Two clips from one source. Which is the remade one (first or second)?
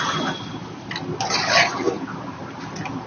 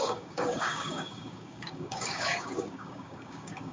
second